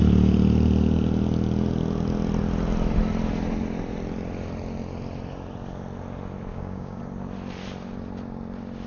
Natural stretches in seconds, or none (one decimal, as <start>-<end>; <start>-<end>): 0.0-6.5; 7.0-8.9